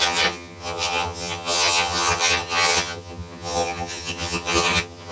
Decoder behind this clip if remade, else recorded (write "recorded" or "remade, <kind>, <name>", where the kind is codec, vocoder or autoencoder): remade, vocoder, HiFi-GAN